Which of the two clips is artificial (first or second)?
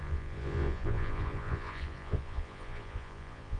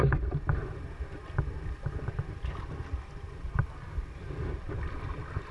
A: first